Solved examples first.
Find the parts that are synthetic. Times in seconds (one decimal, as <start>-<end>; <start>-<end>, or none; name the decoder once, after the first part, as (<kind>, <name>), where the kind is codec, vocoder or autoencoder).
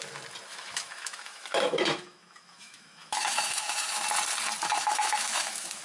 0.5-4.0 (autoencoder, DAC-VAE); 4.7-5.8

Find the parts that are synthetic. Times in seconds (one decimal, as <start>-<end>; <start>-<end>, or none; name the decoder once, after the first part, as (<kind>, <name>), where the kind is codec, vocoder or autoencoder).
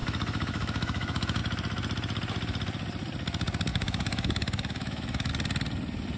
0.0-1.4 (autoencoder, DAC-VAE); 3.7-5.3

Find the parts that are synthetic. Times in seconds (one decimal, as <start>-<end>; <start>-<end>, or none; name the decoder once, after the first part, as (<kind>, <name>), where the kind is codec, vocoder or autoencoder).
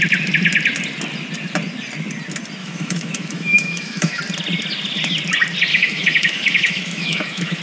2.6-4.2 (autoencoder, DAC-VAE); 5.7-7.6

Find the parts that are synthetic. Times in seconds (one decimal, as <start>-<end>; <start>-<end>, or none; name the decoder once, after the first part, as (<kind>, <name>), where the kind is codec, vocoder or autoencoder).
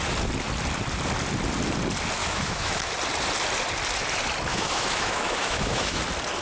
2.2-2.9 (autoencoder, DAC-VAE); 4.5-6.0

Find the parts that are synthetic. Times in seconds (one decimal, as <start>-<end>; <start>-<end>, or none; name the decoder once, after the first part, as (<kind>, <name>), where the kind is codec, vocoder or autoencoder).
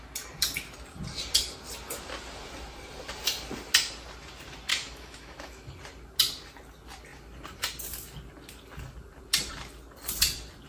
4.7-5.7 (autoencoder, DAC-VAE)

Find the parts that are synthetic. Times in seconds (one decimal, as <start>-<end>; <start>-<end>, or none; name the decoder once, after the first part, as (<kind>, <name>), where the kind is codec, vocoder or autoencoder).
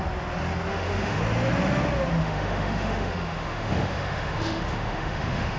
0.7-1.2 (autoencoder, DAC-VAE); 2.2-5.6